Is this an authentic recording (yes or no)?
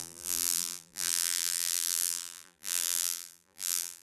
no